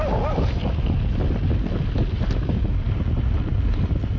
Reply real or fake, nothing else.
real